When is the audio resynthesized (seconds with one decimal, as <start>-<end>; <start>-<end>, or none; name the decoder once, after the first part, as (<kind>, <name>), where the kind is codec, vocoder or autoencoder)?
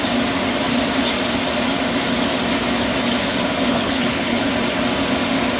3.7-4.5 (codec, HILCodec)